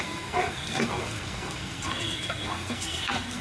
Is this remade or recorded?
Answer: remade